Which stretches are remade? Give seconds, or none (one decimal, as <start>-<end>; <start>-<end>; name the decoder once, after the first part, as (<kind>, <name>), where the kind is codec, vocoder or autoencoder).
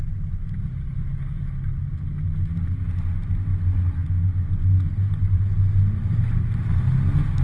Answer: none